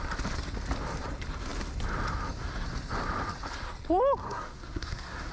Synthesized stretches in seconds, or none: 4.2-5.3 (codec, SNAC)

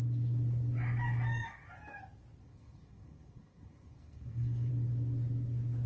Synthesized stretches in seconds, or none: 2.4-4.7 (codec, SNAC)

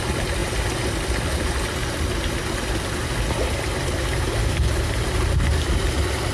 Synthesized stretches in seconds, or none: none

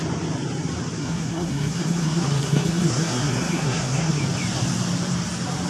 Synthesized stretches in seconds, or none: 1.0-4.2 (codec, SNAC)

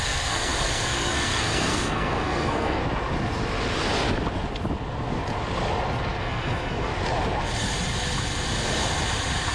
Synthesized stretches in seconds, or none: 0.0-2.8 (codec, SNAC); 6.2-6.9

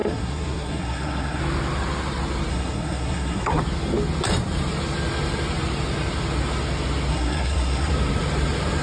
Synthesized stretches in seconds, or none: 0.0-1.4 (codec, SNAC); 2.5-3.6; 7.1-7.9

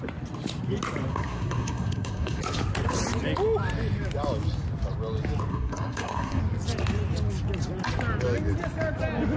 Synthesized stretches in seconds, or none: 1.1-2.4 (codec, SNAC); 5.5-6.4

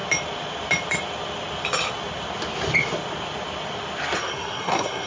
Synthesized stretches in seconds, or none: 4.2-5.1 (codec, SNAC)